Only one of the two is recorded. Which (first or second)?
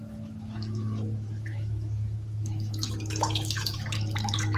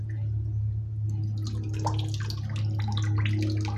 second